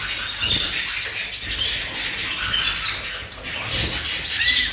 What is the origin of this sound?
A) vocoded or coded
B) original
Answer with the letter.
B